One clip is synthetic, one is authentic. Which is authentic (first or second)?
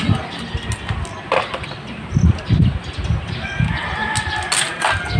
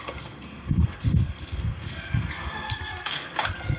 first